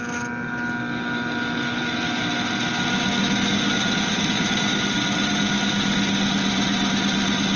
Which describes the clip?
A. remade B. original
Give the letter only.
B